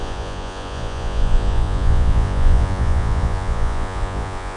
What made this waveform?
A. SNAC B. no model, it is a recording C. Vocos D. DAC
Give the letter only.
C